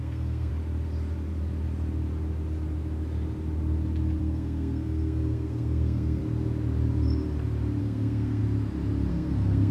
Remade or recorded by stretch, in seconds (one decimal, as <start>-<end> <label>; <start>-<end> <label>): 0.0-0.5 remade; 0.5-4.2 recorded; 4.2-6.2 remade; 6.2-7.8 recorded; 7.8-8.4 remade; 8.4-9.1 recorded; 9.1-9.7 remade